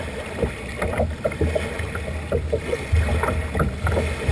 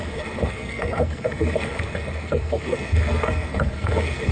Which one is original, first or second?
first